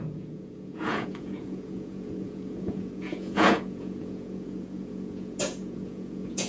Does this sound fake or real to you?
fake